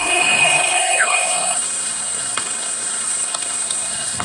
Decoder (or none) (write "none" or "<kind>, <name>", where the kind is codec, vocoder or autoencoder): codec, SNAC